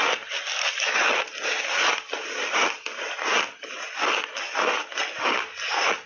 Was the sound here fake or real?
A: real